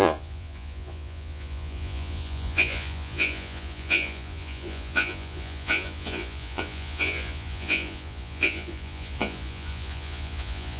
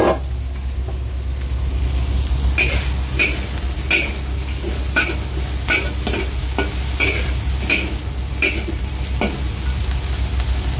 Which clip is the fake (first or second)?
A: first